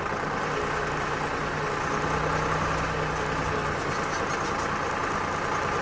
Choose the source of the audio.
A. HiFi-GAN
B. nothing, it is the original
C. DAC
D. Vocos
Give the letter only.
B